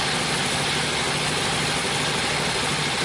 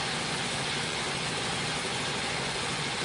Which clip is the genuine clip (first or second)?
first